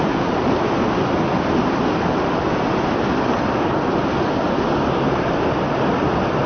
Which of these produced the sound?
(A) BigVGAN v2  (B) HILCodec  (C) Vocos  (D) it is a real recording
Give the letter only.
D